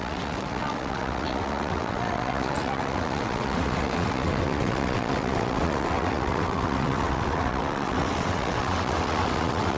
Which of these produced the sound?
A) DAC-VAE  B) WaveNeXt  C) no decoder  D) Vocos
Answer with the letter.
B